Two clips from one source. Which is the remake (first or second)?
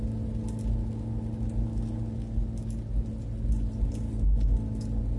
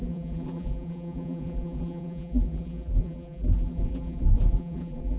second